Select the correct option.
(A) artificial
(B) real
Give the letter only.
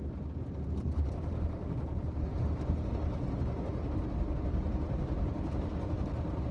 B